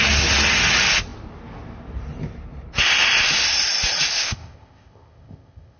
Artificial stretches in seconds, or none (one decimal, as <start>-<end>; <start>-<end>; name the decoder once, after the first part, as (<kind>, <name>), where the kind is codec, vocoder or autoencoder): 4.1-5.8 (codec, ZipCodec)